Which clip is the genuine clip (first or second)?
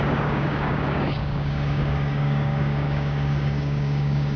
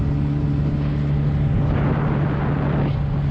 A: second